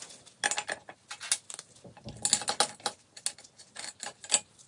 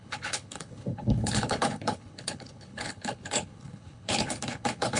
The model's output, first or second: second